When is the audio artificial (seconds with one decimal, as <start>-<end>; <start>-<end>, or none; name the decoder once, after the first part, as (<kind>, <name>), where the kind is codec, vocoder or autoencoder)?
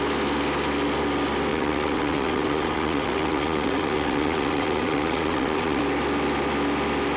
1.5-5.8 (vocoder, WaveNeXt)